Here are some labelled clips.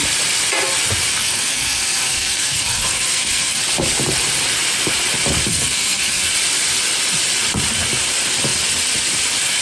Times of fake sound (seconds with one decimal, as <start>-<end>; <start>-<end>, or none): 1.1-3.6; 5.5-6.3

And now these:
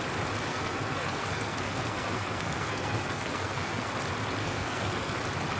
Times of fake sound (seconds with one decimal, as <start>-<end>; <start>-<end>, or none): 0.5-3.9; 4.4-5.1

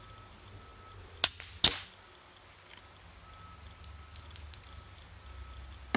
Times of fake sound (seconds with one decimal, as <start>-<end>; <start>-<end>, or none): none